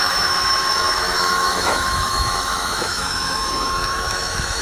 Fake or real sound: fake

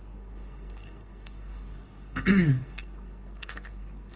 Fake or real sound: fake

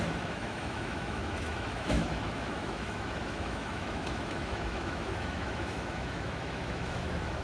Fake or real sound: fake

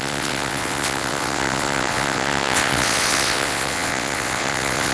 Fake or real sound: fake